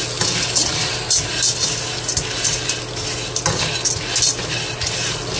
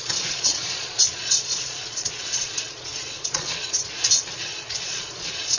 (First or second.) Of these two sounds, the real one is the first